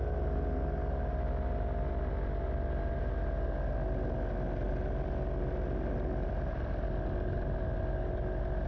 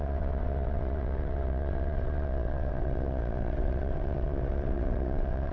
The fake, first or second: second